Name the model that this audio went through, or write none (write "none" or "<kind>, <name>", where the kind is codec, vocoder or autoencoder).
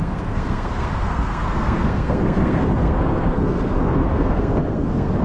codec, SNAC